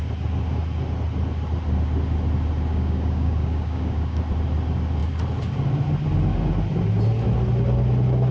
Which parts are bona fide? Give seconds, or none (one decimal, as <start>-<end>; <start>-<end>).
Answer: 0.0-2.7; 4.2-8.3